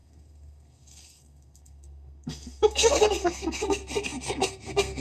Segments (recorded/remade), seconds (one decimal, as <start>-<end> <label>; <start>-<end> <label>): 0.0-5.0 remade